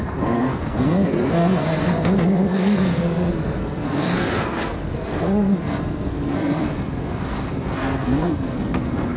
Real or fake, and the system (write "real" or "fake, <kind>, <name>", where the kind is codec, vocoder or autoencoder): fake, codec, SNAC